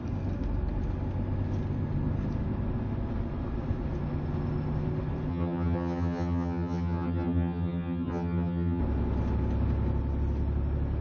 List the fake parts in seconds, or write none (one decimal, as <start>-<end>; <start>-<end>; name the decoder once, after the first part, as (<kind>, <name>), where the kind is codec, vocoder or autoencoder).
5.3-8.8 (vocoder, HiFi-GAN)

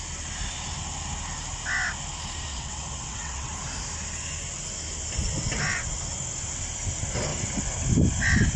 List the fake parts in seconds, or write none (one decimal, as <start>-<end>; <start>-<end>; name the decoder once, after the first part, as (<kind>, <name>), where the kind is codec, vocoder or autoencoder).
2.5-3.5 (vocoder, WaveNeXt)

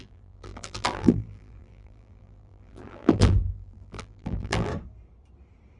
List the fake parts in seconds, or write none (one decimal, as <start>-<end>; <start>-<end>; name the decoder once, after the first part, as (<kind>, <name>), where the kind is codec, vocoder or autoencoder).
0.0-4.7 (vocoder, BigVGAN v2)

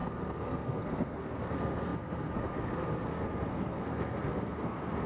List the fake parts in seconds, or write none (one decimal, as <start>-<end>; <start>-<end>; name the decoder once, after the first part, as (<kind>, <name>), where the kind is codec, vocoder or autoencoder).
0.0-5.1 (codec, SNAC)

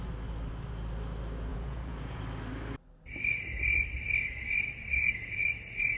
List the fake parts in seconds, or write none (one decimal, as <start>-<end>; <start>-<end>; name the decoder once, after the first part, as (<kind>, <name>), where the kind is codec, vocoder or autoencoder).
1.5-2.2 (vocoder, Vocos)

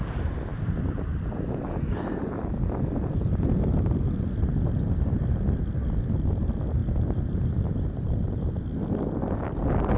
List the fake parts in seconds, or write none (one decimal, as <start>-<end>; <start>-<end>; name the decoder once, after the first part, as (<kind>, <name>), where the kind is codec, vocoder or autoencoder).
6.8-8.6 (vocoder, BigVGAN v2)